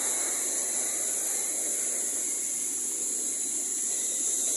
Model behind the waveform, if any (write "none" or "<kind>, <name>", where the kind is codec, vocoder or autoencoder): none